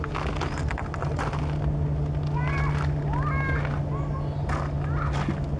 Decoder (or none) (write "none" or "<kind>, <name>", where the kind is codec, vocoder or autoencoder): none